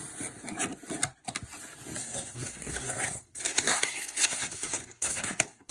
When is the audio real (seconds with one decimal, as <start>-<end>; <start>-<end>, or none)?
0.0-2.0